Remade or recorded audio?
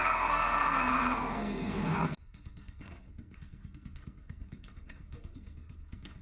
remade